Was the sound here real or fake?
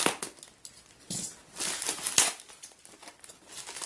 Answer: real